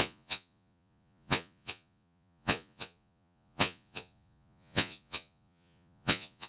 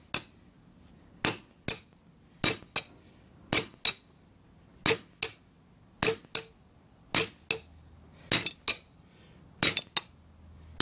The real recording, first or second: second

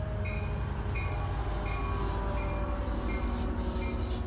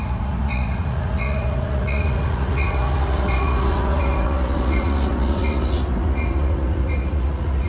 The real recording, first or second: first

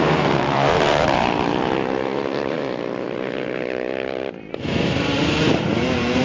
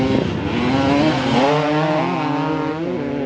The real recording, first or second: second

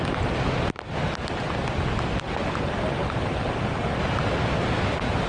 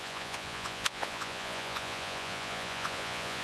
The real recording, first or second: first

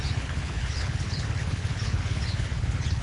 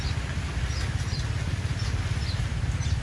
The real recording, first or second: second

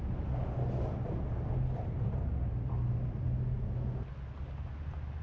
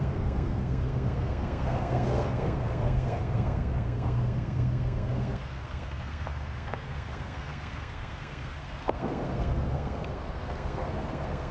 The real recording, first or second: first